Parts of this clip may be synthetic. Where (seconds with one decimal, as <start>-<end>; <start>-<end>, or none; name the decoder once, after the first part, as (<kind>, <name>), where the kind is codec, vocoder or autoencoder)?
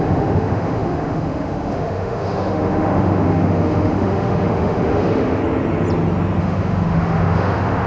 0.0-5.4 (autoencoder, DAC-VAE); 6.4-7.9